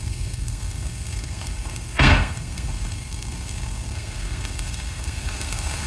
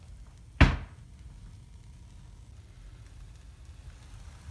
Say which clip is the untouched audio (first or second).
second